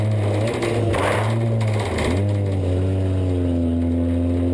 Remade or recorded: recorded